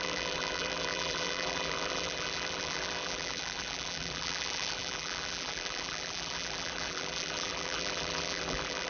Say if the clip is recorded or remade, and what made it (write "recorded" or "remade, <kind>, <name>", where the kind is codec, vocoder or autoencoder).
remade, vocoder, BigVGAN v2